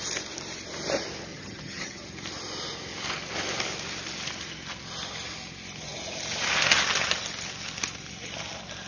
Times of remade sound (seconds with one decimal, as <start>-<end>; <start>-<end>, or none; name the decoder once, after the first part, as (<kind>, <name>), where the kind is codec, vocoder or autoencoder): 1.3-2.0 (vocoder, HiFi-GAN)